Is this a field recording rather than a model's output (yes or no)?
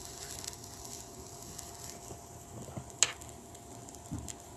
yes